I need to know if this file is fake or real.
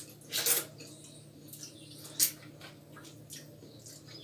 real